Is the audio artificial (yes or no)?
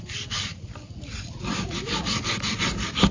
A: no